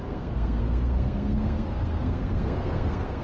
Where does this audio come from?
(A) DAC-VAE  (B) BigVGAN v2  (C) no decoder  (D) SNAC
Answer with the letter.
D